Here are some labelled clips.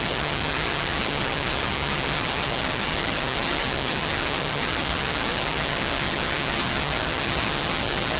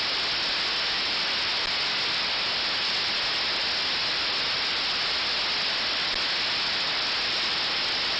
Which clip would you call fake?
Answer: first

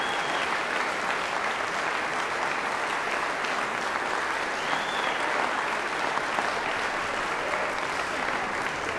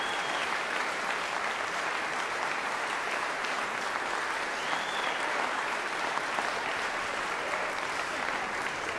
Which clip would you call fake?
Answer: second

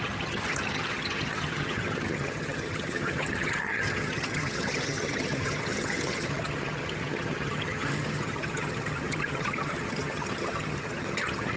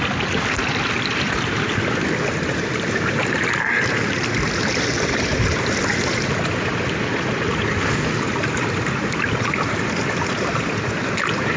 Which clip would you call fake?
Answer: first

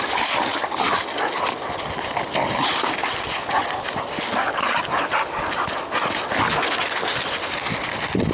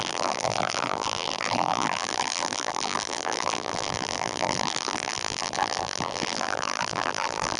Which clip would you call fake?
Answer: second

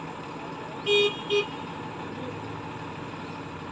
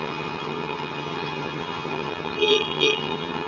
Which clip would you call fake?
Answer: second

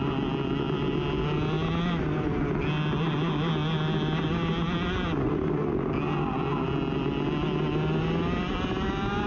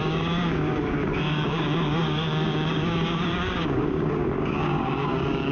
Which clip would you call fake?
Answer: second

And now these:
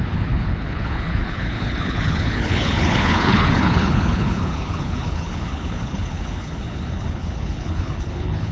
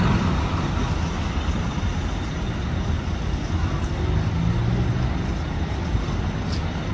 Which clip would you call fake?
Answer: first